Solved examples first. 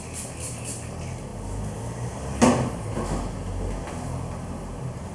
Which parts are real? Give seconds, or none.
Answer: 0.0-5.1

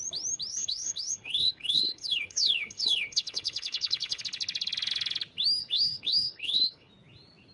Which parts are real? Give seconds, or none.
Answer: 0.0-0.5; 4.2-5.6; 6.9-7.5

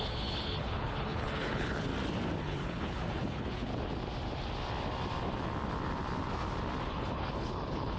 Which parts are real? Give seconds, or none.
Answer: 1.9-2.4; 3.7-6.9

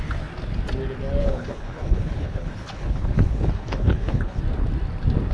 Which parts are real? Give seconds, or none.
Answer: 0.0-1.2; 4.4-5.3

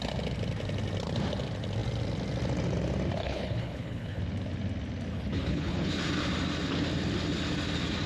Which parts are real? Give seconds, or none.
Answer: 0.0-3.2; 4.2-5.1; 5.9-8.1